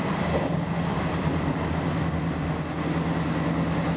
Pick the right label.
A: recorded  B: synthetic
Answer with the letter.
A